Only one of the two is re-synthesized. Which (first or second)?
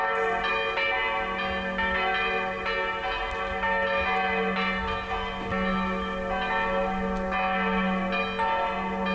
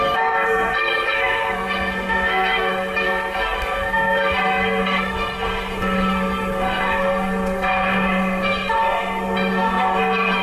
second